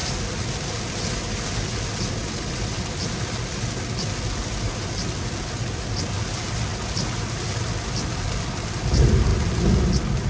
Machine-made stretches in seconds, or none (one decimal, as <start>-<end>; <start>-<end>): none